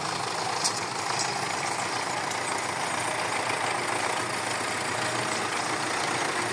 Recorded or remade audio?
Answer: recorded